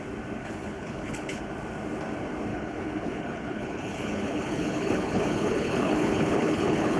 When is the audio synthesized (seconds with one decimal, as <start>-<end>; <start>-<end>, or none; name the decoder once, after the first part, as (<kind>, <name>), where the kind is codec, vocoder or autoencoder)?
0.4-1.4 (codec, HILCodec); 2.5-7.0